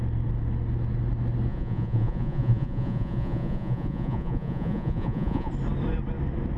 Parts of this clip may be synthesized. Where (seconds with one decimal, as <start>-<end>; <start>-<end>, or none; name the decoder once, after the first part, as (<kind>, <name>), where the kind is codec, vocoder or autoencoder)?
1.5-5.5 (vocoder, Vocos)